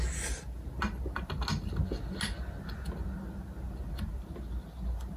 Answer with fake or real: real